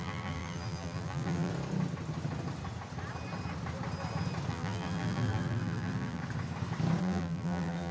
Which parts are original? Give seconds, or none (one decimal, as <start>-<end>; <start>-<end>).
1.5-4.5; 6.2-7.0